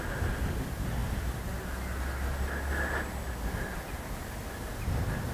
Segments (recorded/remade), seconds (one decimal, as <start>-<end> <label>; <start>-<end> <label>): 0.0-5.3 recorded